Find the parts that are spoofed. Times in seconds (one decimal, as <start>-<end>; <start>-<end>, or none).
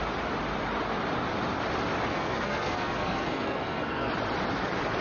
2.1-4.1